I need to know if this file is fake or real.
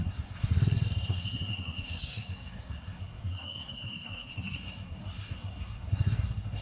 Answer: fake